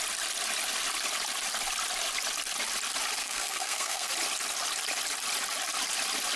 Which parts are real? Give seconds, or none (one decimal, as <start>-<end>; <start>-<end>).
0.0-3.2; 4.1-6.4